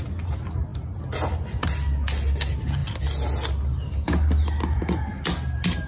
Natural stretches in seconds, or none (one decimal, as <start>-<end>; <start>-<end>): 0.0-5.9